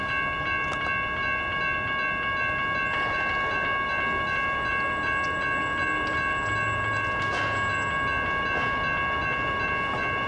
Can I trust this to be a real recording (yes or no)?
yes